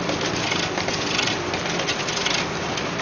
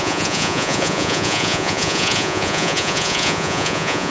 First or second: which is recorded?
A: first